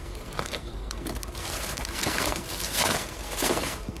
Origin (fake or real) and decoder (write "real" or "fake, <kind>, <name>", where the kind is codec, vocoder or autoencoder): fake, codec, SNAC